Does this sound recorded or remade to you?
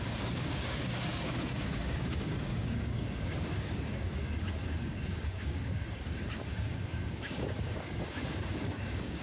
remade